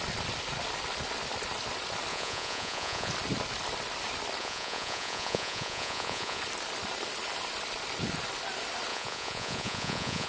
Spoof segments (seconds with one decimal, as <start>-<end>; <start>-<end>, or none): 2.1-3.1; 4.4-6.4; 8.9-10.3

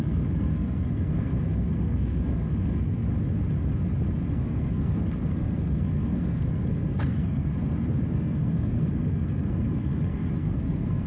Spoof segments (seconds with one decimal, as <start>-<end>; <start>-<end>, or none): 0.0-3.1; 4.3-7.5; 8.0-11.1